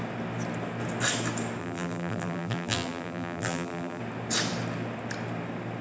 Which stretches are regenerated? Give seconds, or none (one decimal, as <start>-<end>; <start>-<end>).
1.6-4.0